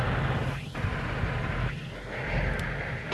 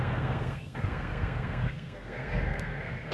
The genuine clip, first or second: first